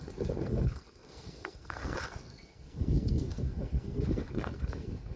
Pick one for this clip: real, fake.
fake